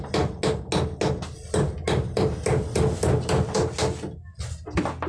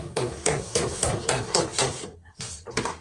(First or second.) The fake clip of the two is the second